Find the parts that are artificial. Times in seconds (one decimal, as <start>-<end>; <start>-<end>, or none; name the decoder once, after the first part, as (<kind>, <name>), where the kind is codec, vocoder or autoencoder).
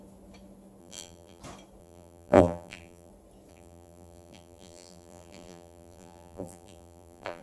0.8-1.4 (vocoder, BigVGAN v2); 1.8-3.1; 3.5-7.4